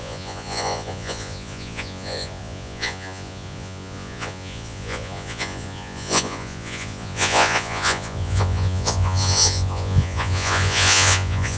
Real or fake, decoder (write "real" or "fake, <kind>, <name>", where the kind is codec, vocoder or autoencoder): fake, vocoder, Vocos